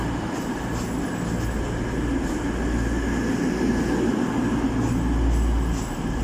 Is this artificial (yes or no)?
no